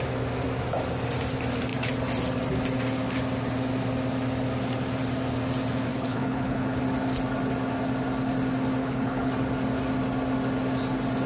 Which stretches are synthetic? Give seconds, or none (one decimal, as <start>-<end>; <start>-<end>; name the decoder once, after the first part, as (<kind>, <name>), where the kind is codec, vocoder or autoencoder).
5.9-6.8 (codec, HILCodec); 8.8-9.3